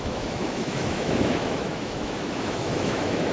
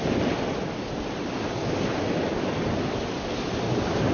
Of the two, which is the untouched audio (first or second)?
second